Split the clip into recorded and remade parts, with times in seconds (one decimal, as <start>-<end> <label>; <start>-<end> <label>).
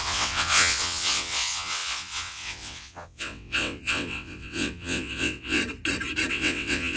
0.0-5.6 remade; 5.6-6.3 recorded; 6.3-7.0 remade